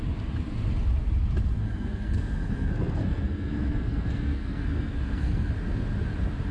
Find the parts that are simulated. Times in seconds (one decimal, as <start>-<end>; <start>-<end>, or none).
1.6-5.5